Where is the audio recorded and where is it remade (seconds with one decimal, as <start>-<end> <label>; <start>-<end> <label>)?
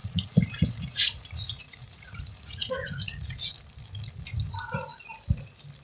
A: 0.0-3.5 remade; 3.5-5.8 recorded